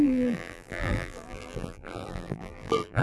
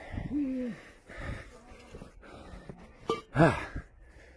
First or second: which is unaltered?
second